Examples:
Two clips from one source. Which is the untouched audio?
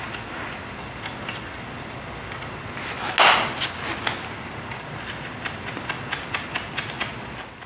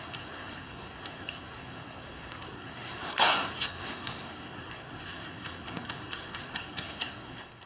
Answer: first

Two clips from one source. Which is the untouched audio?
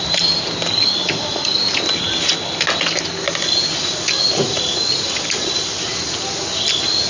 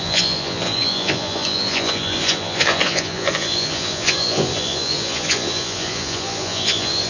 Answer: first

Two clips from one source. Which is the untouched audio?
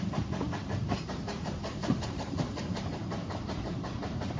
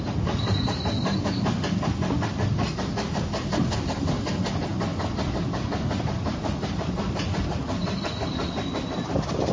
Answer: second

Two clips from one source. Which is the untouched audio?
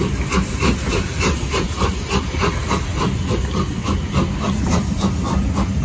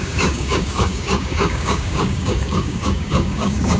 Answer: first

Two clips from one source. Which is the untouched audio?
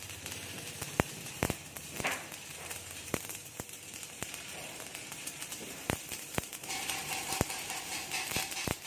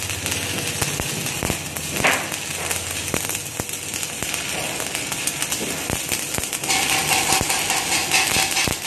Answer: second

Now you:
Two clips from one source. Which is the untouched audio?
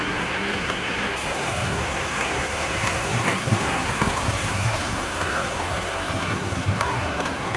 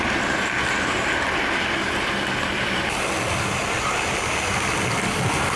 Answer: second